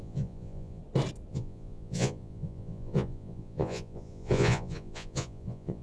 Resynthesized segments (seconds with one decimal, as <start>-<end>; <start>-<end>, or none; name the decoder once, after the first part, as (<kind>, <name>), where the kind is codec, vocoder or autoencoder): 0.0-0.8 (vocoder, Vocos); 1.3-5.8